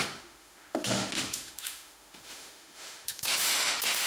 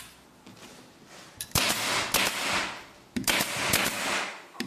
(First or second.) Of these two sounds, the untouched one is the second